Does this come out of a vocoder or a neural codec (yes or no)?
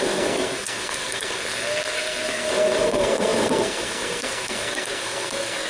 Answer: yes